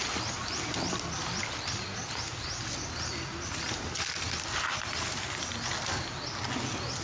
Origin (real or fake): real